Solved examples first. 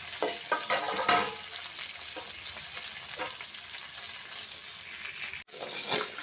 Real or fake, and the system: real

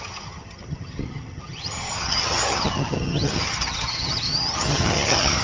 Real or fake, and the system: fake, vocoder, HiFi-GAN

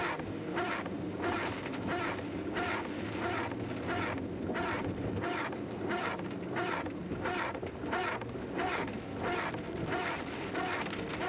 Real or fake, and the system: real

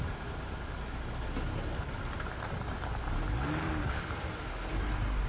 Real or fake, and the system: real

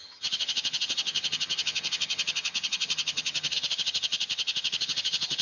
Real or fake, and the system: fake, vocoder, HiFi-GAN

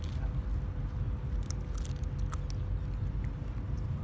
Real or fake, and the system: real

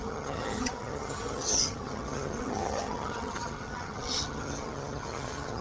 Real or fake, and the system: fake, vocoder, HiFi-GAN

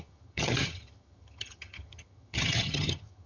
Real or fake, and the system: fake, vocoder, HiFi-GAN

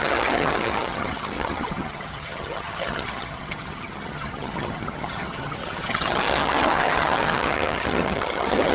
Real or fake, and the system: fake, vocoder, HiFi-GAN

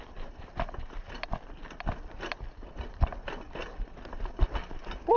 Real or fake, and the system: real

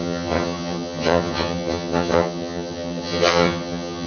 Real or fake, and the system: fake, vocoder, HiFi-GAN